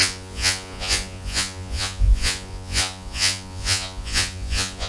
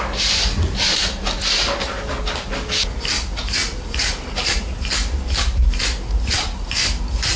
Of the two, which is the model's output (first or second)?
first